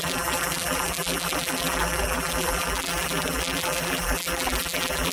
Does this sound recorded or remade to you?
remade